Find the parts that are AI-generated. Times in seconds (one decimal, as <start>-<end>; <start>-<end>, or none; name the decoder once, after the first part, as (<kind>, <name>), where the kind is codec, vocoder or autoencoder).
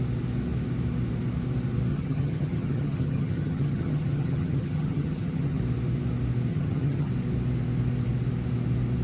1.9-5.6 (vocoder, HiFi-GAN); 6.5-7.1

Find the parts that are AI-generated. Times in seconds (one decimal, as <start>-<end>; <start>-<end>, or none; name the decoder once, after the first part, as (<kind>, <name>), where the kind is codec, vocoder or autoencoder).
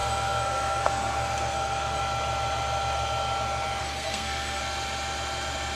0.0-2.0 (codec, SNAC); 3.8-4.6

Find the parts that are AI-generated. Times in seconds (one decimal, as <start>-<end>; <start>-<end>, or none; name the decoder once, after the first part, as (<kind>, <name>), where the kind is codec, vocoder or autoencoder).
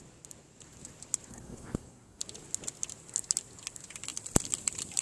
1.3-2.2 (codec, SNAC)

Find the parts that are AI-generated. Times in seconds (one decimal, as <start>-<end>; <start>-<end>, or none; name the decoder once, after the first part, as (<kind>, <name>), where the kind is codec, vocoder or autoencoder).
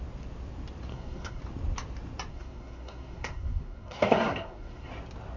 0.9-1.4 (codec, SNAC); 2.3-4.9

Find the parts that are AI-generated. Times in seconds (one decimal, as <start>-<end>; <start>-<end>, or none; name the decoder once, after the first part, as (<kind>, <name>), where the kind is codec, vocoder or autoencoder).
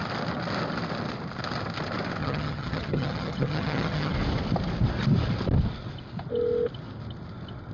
2.2-4.1 (vocoder, HiFi-GAN)